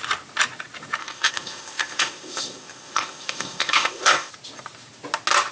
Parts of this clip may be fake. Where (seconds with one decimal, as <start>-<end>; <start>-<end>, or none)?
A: 1.0-4.3